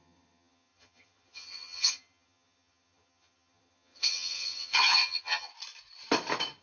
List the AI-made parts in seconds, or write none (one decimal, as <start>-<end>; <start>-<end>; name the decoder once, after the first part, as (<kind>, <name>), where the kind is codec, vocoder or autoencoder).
0.0-5.5 (vocoder, HiFi-GAN)